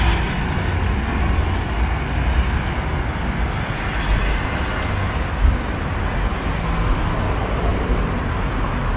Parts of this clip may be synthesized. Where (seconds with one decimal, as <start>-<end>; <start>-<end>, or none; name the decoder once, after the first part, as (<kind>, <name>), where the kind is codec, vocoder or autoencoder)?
none